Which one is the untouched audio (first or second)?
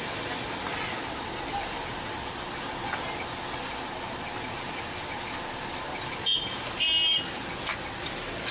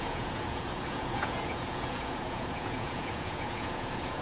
first